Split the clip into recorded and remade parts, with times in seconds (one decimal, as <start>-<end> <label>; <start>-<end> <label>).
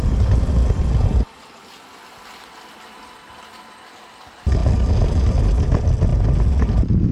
0.0-7.1 recorded